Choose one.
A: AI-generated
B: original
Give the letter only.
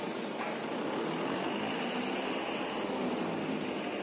B